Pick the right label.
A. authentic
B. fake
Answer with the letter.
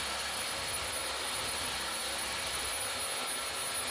A